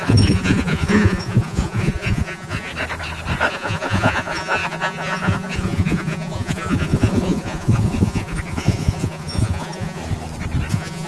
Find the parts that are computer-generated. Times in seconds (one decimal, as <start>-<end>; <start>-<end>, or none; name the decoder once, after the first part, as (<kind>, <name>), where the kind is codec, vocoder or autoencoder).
0.0-2.7 (vocoder, Vocos); 3.5-10.0; 10.7-11.1